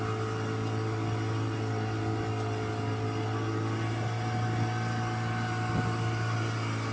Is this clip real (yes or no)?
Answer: yes